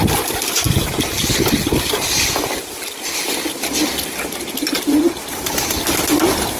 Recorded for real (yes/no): yes